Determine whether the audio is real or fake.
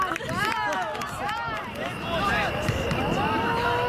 real